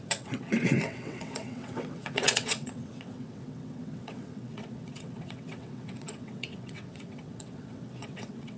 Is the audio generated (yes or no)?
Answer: yes